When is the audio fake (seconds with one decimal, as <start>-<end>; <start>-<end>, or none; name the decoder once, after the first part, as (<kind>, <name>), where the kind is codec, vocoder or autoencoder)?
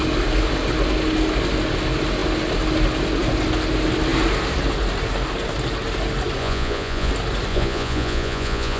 6.4-7.1 (vocoder, Vocos); 7.5-8.8